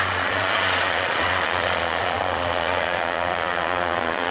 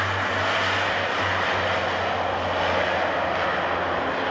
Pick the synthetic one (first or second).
first